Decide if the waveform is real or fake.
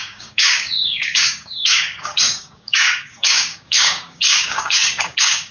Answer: fake